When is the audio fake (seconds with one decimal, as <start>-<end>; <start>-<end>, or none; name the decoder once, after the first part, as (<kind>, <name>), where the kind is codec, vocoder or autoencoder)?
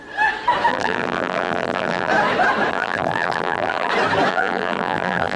0.7-2.1 (vocoder, BigVGAN v2); 2.7-3.9; 4.3-5.4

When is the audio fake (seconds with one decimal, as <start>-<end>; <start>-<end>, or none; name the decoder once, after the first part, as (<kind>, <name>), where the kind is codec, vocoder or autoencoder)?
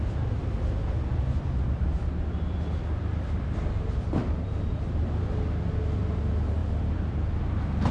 1.1-5.3 (vocoder, BigVGAN v2); 6.6-7.3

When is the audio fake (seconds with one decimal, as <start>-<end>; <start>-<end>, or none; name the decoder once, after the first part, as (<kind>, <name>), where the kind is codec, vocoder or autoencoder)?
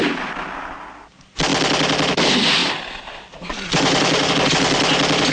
2.6-4.3 (vocoder, BigVGAN v2)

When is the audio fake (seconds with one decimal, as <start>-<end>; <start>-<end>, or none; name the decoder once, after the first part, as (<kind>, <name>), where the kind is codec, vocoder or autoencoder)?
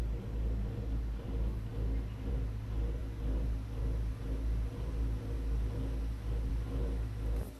none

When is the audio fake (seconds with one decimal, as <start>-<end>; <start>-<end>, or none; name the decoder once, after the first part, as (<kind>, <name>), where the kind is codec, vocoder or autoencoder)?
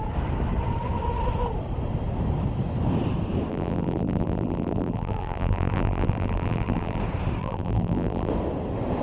3.5-7.0 (vocoder, BigVGAN v2); 7.4-8.3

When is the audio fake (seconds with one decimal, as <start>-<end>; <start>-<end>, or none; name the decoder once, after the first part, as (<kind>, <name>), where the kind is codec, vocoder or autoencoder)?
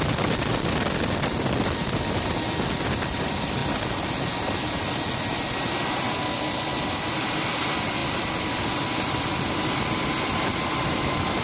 0.0-3.6 (vocoder, BigVGAN v2); 6.7-11.4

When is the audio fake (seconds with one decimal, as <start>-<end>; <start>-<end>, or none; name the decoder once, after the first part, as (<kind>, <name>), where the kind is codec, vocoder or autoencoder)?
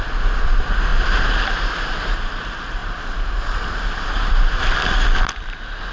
none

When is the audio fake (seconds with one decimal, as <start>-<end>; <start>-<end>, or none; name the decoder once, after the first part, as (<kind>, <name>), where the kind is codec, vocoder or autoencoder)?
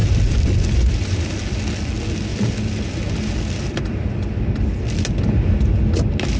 0.0-1.3 (vocoder, BigVGAN v2); 2.3-4.7